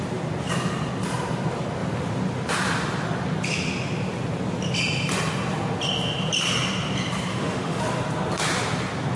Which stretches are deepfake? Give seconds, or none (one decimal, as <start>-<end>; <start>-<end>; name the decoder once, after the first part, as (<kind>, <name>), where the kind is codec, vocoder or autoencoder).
7.3-7.8 (autoencoder, DAC-VAE)